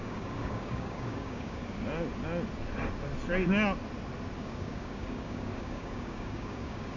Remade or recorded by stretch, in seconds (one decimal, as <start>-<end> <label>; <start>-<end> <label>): 0.0-1.6 remade; 1.6-4.4 recorded; 4.4-7.0 remade